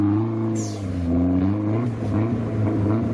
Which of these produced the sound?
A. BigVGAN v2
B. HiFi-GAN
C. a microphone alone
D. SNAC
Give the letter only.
C